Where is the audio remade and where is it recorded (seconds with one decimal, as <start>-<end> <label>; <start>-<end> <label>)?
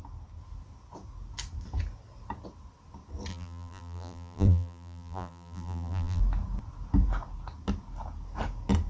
0.0-3.3 recorded; 3.3-6.2 remade; 6.2-8.9 recorded